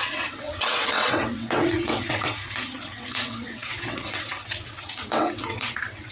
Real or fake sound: fake